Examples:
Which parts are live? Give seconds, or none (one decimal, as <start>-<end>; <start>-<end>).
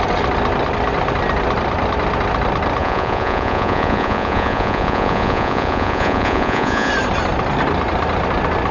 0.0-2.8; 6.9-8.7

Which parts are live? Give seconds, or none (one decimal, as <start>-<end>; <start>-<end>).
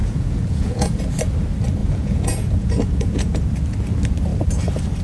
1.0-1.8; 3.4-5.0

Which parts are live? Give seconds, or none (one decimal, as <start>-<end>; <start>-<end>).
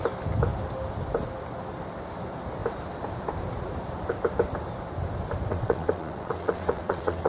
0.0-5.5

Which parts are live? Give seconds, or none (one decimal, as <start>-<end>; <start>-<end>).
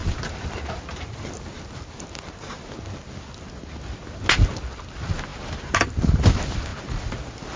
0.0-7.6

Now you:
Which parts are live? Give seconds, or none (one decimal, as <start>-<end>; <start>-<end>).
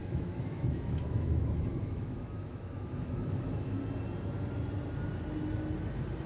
3.8-6.3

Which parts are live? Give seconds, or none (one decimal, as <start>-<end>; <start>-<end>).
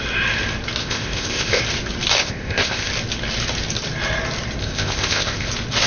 0.0-0.8; 1.6-2.2; 2.9-4.6; 5.5-5.9